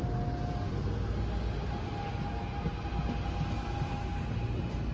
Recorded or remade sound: recorded